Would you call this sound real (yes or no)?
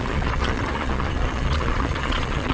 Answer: no